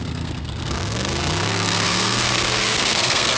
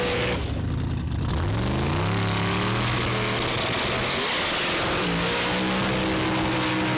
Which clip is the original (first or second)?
second